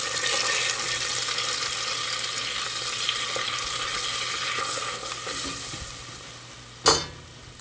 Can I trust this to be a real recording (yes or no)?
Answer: yes